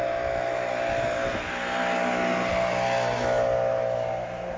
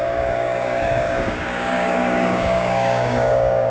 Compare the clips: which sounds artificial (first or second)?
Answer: second